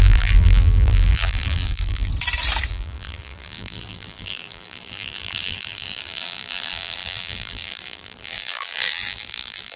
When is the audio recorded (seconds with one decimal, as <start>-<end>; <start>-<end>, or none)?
2.1-2.7